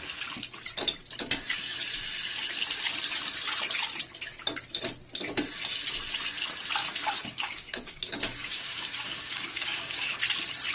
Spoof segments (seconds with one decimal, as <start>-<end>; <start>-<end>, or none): 6.8-10.2